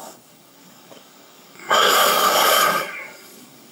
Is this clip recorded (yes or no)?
no